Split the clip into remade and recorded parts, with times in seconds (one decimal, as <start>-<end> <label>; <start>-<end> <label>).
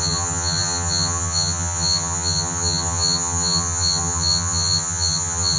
0.0-5.6 remade